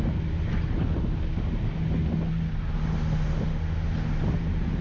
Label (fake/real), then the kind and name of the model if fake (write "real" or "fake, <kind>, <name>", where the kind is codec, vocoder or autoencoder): real